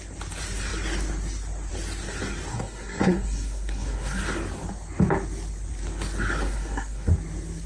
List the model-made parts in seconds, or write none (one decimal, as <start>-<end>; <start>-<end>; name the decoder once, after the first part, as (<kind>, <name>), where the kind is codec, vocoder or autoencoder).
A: 2.5-4.2 (codec, SNAC); 6.4-7.1